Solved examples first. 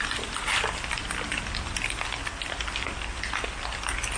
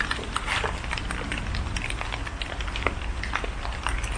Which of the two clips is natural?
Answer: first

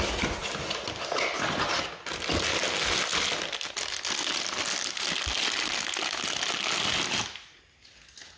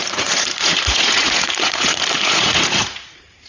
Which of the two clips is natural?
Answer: first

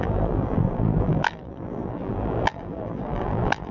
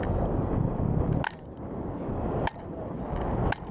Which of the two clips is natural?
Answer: second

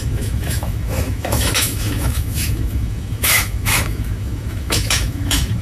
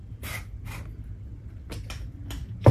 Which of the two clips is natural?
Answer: second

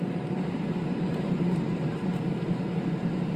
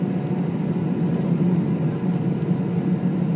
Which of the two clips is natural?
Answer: second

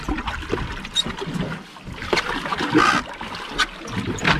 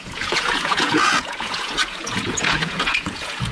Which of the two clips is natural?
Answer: first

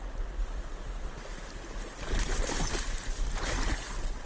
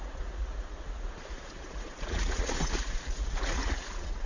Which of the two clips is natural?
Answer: first